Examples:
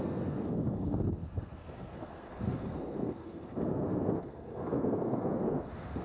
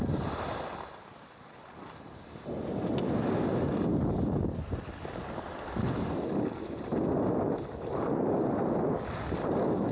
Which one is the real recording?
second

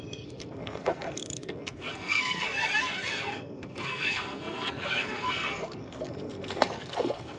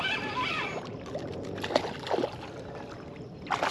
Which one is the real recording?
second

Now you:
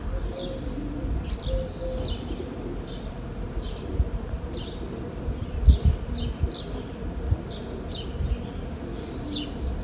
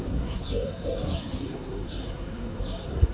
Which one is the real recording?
first